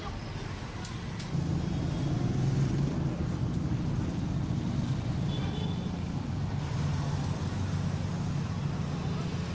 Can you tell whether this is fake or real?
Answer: real